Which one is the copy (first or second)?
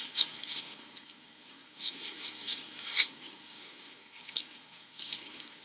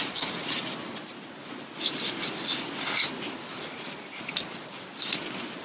first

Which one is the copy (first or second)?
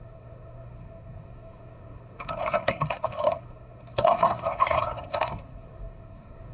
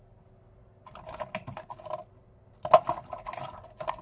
first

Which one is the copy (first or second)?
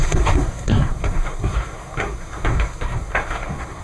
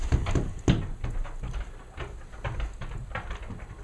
first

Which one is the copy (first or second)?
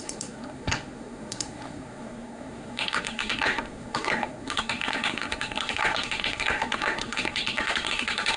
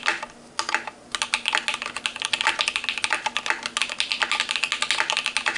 first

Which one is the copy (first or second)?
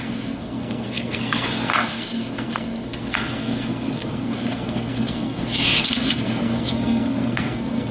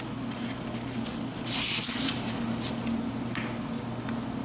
first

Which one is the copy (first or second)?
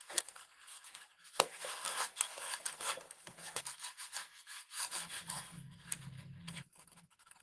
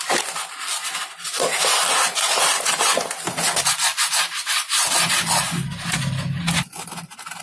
first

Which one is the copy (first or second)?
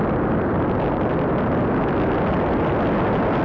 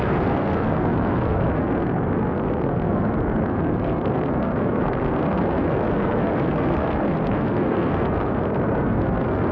second